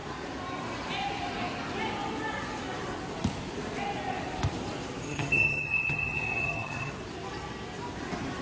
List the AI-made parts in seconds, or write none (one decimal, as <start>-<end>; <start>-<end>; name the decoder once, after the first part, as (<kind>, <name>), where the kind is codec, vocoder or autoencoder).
5.1-6.9 (vocoder, HiFi-GAN)